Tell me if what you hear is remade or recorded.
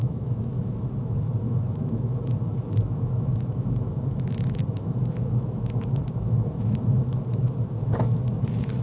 remade